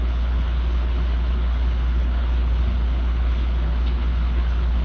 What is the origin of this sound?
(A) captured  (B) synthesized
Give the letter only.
B